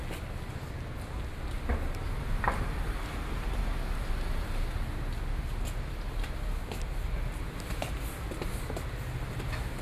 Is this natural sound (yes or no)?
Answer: yes